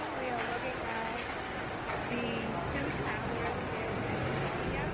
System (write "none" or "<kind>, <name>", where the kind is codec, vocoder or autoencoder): none